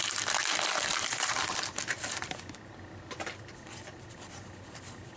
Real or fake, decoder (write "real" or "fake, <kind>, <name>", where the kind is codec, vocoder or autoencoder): real